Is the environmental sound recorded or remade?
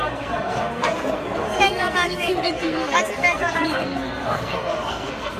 remade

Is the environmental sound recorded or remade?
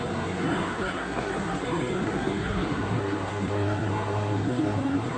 remade